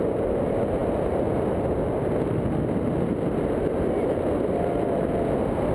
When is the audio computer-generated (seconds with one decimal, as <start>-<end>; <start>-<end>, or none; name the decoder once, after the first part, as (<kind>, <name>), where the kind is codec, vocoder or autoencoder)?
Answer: none

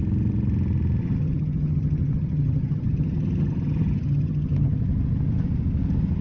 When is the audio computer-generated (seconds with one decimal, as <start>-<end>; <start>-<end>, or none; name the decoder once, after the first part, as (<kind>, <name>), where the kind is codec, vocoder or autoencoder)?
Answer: 1.0-4.7 (vocoder, HiFi-GAN)

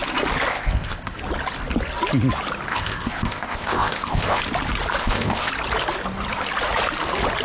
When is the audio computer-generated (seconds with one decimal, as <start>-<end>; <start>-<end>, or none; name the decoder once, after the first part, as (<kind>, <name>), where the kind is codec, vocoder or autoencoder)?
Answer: 0.5-1.2 (codec, ZipCodec); 2.7-4.4; 5.0-5.5

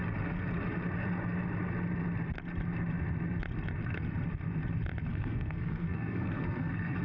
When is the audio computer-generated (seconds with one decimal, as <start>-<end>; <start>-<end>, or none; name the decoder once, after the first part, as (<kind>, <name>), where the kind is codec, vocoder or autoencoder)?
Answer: 5.1-7.0 (codec, SNAC)

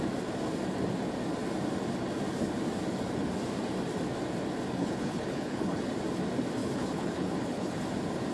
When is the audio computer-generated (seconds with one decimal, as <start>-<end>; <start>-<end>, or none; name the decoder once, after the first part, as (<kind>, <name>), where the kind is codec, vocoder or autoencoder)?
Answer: 4.8-5.9 (codec, HILCodec); 6.6-7.7